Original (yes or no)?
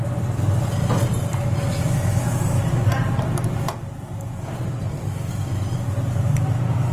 yes